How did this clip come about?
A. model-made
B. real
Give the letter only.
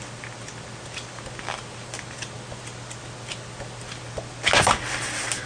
B